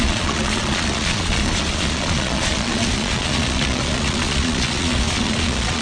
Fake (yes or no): yes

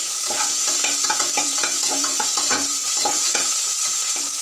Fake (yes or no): yes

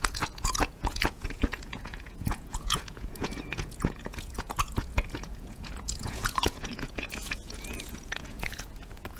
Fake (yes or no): yes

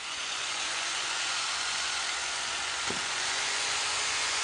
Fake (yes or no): yes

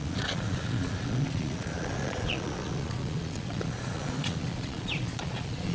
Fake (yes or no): yes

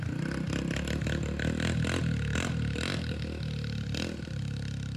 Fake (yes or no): no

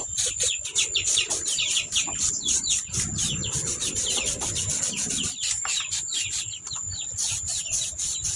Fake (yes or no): no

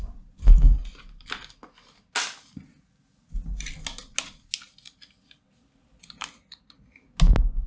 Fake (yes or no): no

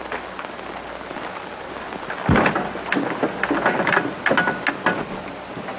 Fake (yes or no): no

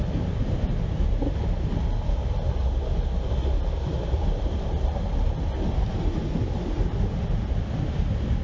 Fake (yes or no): no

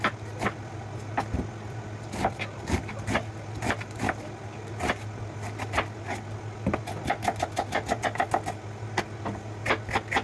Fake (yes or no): no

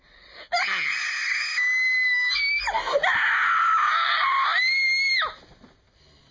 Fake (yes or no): no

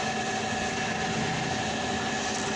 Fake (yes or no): no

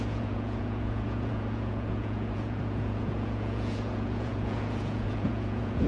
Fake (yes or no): yes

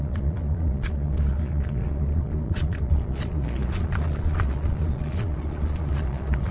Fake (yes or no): yes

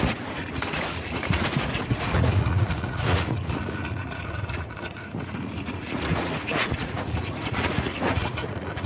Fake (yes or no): yes